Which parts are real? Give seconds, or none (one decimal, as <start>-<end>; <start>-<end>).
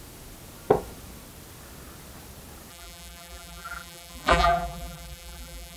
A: 0.0-2.7